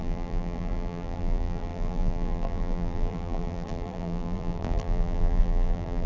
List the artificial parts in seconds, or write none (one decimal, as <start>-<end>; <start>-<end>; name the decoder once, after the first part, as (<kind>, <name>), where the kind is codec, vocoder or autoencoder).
0.0-6.1 (vocoder, BigVGAN v2)